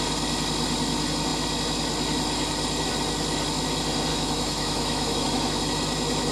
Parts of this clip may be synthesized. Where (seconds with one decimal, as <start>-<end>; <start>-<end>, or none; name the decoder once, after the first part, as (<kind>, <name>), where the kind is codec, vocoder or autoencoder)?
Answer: 4.1-5.6 (autoencoder, DAC-VAE)